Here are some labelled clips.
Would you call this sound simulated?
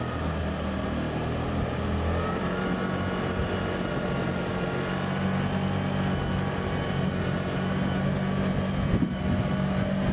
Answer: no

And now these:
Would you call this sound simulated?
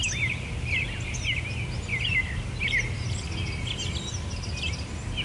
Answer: no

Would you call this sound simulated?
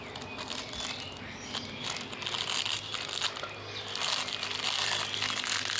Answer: no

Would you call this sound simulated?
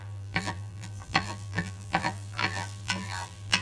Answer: yes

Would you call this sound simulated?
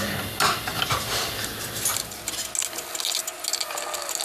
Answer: no